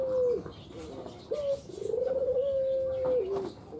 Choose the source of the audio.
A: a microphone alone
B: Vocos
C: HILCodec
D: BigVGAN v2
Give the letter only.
A